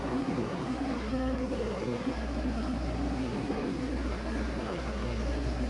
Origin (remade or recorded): remade